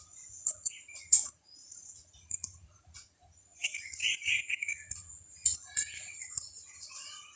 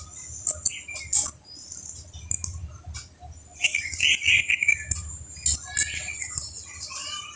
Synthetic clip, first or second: first